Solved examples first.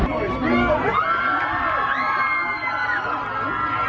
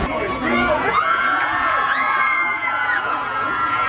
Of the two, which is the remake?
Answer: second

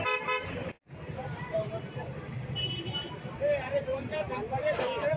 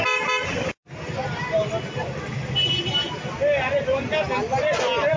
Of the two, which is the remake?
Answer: first